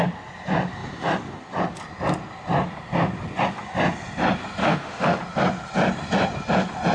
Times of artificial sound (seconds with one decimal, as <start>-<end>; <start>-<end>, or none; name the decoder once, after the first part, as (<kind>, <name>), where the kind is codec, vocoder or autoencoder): 4.6-5.2 (autoencoder, DAC-VAE)